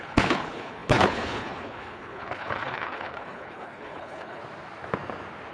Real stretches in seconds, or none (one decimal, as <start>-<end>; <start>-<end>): 4.4-5.5